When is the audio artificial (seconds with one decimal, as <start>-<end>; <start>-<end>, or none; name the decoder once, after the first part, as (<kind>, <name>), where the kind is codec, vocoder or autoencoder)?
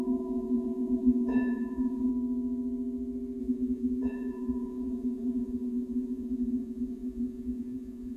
0.0-2.1 (vocoder, Vocos); 3.4-8.2